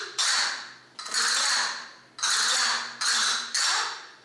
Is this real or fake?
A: real